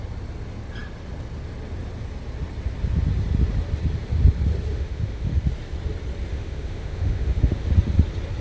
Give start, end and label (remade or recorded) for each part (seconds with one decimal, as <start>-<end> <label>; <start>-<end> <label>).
0.0-4.7 recorded; 4.7-5.4 remade; 5.4-6.3 recorded; 6.3-7.7 remade; 7.7-8.4 recorded